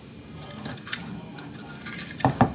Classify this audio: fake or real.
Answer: real